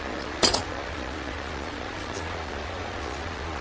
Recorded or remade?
remade